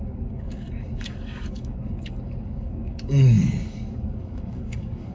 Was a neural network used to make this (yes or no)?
yes